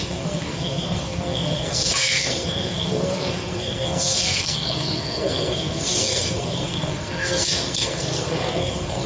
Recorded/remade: remade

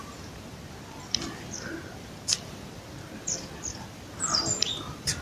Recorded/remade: recorded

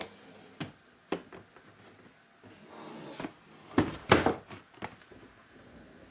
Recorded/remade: recorded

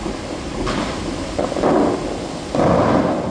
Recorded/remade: recorded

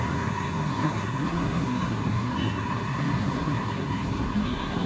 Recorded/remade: remade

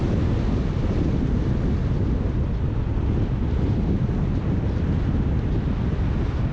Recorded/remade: recorded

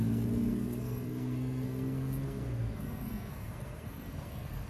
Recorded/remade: remade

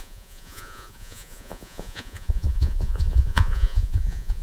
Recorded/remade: remade